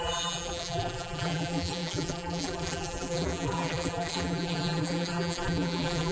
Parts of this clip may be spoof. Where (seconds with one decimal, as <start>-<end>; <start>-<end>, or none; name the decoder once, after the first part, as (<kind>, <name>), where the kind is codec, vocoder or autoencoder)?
0.0-6.1 (vocoder, BigVGAN v2)